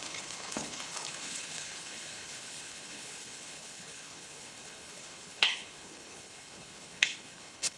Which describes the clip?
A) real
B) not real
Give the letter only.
B